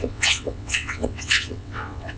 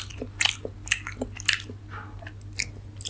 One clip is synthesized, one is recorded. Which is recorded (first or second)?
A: second